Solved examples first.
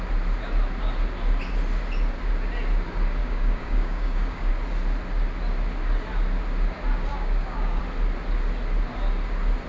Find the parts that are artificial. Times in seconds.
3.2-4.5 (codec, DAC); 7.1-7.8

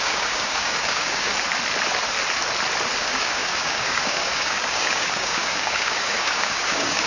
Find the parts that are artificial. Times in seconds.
0.0-1.3 (codec, DAC); 3.0-7.1

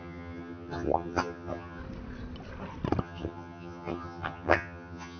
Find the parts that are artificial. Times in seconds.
0.0-1.8 (vocoder, HiFi-GAN); 3.0-5.2